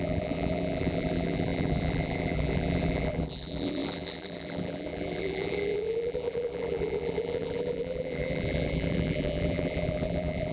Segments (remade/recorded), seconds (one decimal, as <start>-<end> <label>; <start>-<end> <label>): 0.0-10.5 remade